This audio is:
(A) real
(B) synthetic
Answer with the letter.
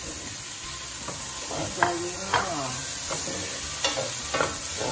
A